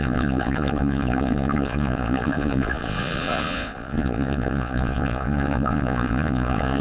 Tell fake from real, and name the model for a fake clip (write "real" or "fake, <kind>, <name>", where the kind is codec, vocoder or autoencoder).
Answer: fake, vocoder, Vocos